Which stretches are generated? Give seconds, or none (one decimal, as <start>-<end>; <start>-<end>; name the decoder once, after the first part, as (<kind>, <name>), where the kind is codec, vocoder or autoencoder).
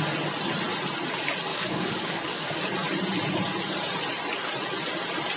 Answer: 1.5-2.6 (codec, DAC)